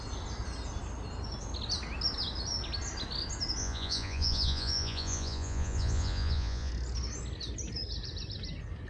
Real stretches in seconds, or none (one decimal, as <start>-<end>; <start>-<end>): 0.0-3.6; 6.7-8.9